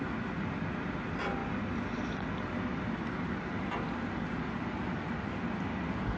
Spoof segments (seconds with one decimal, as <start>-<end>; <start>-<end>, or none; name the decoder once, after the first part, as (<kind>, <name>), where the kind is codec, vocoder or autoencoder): none